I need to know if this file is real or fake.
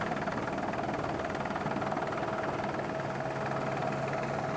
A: real